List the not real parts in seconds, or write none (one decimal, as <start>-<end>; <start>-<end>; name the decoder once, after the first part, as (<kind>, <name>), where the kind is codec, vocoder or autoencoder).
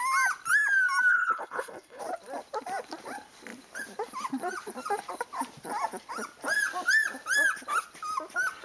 1.1-2.0 (codec, HILCodec)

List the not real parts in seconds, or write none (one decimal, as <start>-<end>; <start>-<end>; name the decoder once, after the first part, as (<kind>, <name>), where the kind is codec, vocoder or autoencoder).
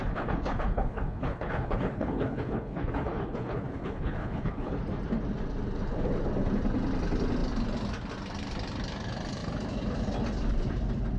0.0-4.8 (codec, HILCodec)